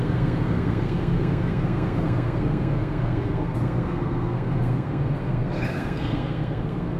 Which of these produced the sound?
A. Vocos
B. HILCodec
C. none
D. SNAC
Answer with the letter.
D